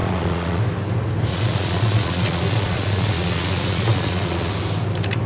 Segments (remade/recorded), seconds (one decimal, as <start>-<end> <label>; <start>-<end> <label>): 0.0-0.6 remade; 0.6-1.3 recorded; 1.3-4.5 remade; 4.5-5.3 recorded